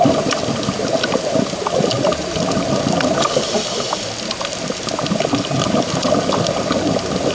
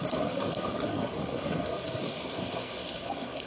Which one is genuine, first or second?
first